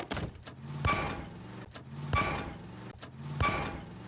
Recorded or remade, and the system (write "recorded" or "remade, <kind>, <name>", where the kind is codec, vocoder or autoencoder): recorded